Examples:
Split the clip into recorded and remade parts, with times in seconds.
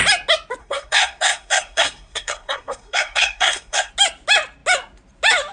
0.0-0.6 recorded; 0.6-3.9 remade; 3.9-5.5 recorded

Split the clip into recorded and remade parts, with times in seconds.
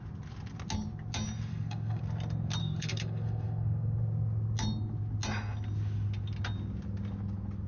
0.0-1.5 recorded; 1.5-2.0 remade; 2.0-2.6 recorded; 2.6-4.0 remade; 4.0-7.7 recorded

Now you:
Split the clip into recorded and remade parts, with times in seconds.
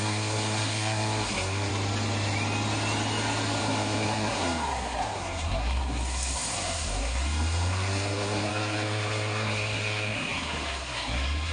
0.0-1.7 remade; 1.7-3.6 recorded; 3.6-11.5 remade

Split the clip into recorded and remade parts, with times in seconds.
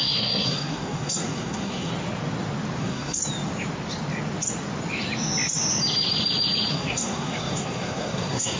0.0-1.9 remade; 1.9-2.8 recorded; 2.8-3.2 remade; 3.2-6.7 recorded; 6.7-8.6 remade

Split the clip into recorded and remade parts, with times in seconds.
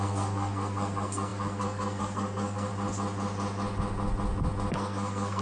0.0-2.7 remade; 2.7-4.7 recorded; 4.7-5.4 remade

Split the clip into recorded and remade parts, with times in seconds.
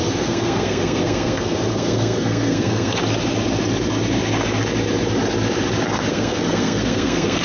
0.0-3.0 remade; 3.0-6.1 recorded; 6.1-7.4 remade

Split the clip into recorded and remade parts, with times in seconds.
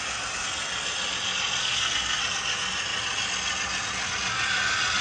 0.0-1.6 recorded; 1.6-2.2 remade; 2.2-5.0 recorded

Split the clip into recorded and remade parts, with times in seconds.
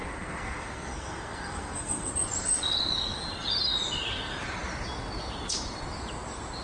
0.0-2.1 remade; 2.1-6.6 recorded